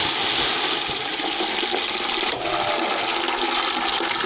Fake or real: real